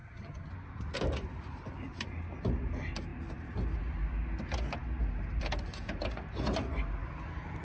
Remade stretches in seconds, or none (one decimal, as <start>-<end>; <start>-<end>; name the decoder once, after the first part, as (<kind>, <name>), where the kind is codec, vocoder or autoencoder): 0.0-0.5 (vocoder, HiFi-GAN)